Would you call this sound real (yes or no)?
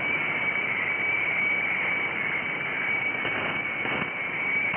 yes